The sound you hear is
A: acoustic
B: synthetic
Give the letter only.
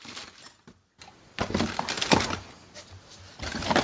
A